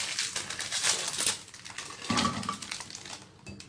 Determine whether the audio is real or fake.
real